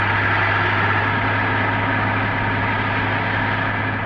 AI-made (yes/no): no